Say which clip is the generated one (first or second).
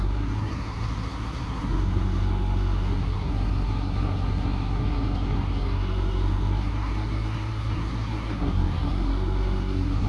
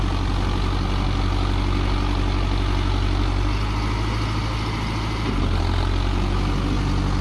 first